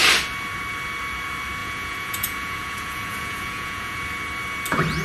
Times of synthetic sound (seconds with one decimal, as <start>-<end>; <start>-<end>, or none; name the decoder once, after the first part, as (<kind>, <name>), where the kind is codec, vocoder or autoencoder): 1.6-4.0 (vocoder, Vocos)